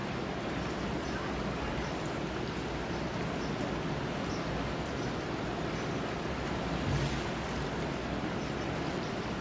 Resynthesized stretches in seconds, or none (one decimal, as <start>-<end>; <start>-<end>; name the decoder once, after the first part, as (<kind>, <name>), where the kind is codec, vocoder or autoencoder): none